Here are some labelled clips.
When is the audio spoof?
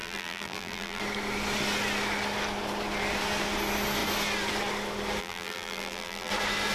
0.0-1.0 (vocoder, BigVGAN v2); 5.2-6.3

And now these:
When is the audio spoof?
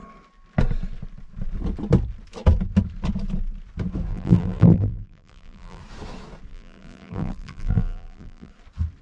4.1-5.8 (vocoder, BigVGAN v2); 6.5-8.5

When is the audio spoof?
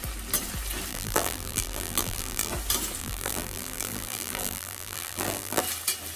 0.9-2.5 (vocoder, BigVGAN v2); 3.0-5.6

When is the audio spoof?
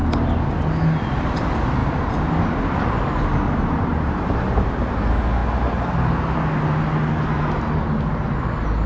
1.8-2.6 (vocoder, BigVGAN v2); 3.9-4.5